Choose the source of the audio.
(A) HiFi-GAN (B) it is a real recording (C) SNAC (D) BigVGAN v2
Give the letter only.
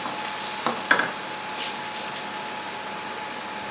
B